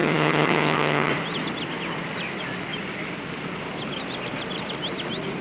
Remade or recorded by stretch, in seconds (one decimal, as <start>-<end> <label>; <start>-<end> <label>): 0.0-1.1 remade; 1.1-5.4 recorded